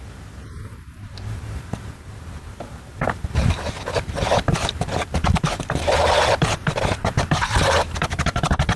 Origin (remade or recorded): remade